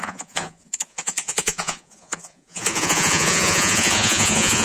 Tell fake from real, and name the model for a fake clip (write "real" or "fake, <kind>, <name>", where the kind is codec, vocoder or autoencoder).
fake, vocoder, Vocos